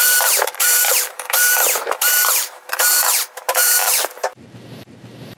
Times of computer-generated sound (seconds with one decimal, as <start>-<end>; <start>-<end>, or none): 0.0-5.4